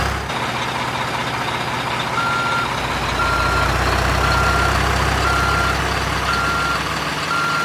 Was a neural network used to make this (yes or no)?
no